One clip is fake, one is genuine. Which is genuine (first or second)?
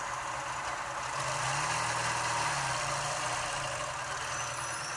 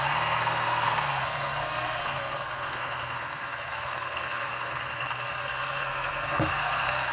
first